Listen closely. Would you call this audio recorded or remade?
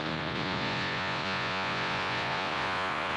remade